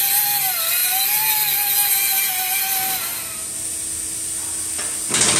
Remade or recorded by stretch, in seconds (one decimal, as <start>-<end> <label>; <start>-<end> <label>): 0.0-5.4 recorded